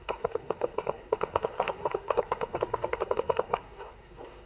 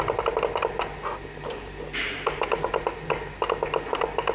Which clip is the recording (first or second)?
second